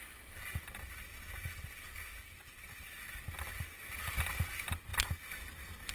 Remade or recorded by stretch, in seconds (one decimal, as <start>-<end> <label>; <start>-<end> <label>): 0.0-5.9 recorded